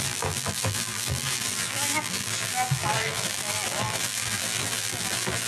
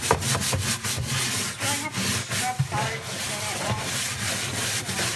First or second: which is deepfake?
first